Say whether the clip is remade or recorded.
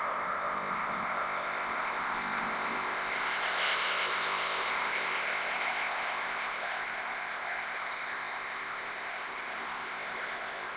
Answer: remade